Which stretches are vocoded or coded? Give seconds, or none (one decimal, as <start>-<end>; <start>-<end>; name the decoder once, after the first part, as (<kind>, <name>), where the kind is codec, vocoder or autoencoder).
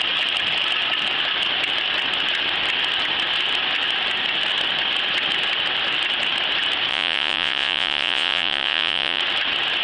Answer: 6.9-9.2 (vocoder, Vocos)